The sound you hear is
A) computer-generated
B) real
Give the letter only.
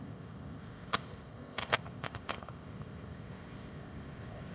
A